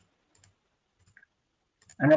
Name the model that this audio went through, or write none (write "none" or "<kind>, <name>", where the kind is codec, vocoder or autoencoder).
none